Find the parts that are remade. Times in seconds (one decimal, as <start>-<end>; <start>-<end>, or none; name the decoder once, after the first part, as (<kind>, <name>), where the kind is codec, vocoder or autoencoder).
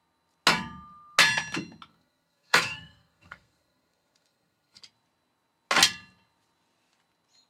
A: 1.9-4.8 (codec, SNAC)